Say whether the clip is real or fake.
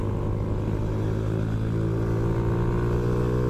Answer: real